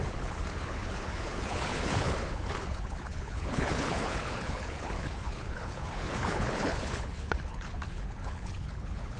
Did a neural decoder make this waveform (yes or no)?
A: yes